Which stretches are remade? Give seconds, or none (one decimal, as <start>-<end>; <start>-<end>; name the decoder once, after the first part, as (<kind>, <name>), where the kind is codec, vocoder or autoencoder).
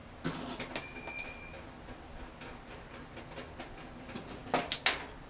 none